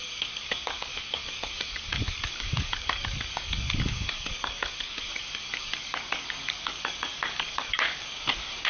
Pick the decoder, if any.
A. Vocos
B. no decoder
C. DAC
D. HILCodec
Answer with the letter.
C